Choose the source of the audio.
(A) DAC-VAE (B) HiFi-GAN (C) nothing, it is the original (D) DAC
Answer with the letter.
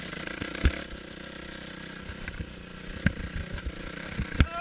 C